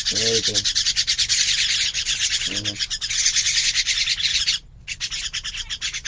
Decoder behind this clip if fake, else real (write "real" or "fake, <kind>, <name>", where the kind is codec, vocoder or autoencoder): real